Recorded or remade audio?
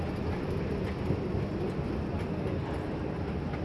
recorded